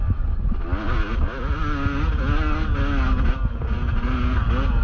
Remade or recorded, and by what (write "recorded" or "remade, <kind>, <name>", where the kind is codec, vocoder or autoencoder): recorded